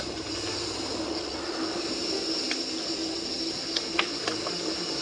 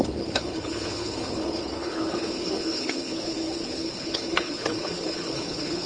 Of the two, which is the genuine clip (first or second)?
first